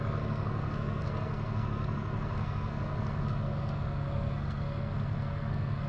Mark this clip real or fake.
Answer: fake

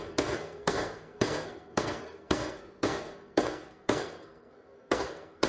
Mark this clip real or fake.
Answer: fake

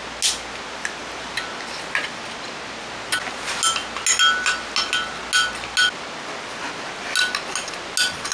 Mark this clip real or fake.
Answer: real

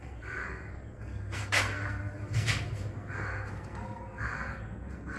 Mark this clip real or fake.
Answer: fake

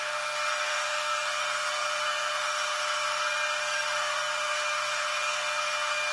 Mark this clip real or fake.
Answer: fake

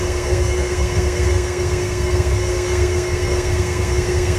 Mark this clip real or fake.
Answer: fake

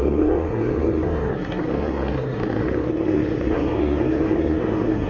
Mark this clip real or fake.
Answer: fake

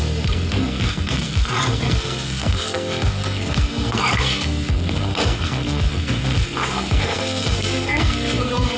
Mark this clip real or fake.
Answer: fake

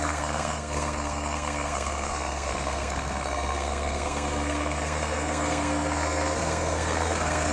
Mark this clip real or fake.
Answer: fake